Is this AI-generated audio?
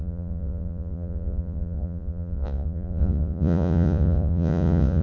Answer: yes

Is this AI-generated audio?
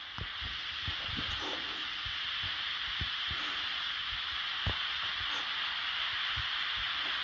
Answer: yes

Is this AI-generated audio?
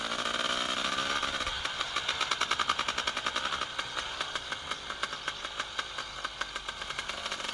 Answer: no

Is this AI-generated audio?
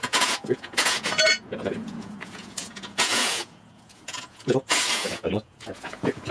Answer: yes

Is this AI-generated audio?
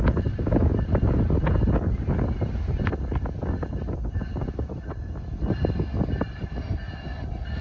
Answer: no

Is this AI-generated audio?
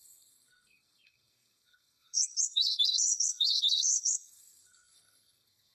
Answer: yes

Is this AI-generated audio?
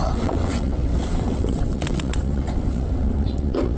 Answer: yes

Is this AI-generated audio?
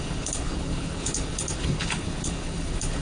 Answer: yes